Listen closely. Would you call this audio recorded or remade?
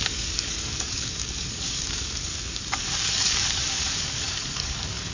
remade